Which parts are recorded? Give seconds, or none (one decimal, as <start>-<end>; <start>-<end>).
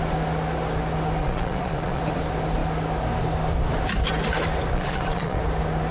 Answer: 0.0-1.2; 2.0-4.7; 5.4-5.9